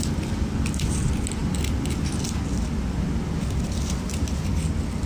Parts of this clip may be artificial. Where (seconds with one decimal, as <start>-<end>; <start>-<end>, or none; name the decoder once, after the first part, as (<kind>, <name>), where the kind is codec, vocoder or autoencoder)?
none

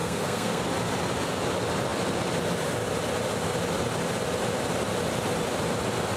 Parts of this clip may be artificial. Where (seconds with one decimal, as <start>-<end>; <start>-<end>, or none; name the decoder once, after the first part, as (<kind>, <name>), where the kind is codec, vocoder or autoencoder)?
0.0-0.6 (codec, SNAC)

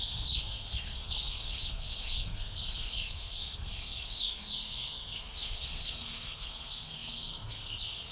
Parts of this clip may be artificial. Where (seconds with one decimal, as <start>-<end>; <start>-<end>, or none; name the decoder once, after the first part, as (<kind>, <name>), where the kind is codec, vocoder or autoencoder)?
0.0-8.1 (codec, SNAC)

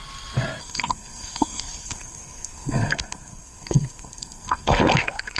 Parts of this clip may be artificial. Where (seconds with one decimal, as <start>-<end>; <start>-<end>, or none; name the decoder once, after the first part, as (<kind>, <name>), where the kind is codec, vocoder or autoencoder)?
0.6-5.4 (codec, SNAC)

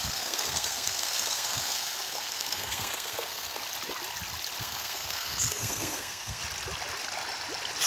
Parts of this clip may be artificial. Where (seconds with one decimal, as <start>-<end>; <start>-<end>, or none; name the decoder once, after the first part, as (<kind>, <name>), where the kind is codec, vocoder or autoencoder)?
0.0-3.6 (codec, SNAC); 4.6-6.4